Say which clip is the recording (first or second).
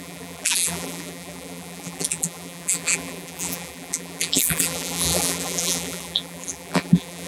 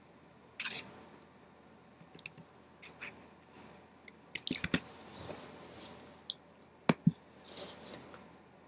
second